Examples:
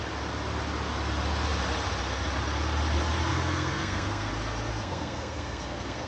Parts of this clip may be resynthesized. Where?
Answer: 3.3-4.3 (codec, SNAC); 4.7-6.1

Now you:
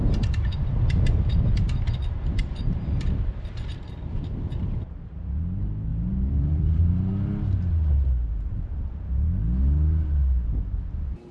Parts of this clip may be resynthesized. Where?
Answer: 5.9-7.1 (vocoder, BigVGAN v2)

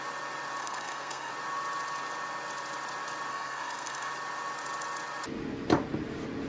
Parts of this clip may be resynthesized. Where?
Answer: 0.6-1.3 (codec, SNAC); 3.3-4.1

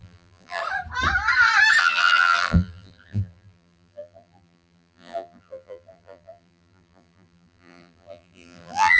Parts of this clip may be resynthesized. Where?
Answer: 0.0-0.6 (vocoder, BigVGAN v2); 1.8-9.0

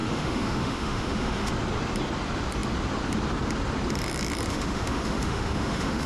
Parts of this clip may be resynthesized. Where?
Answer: 0.0-1.5 (autoencoder, DAC-VAE); 4.5-6.1

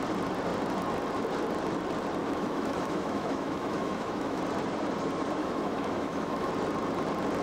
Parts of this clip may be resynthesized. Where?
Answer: 2.2-4.4 (autoencoder, DAC-VAE); 5.4-6.5

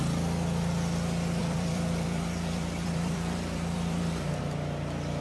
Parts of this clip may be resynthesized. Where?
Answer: 1.4-4.4 (vocoder, BigVGAN v2)

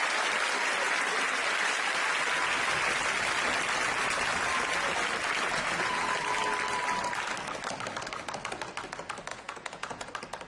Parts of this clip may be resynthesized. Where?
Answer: 9.3-10.1 (vocoder, Vocos)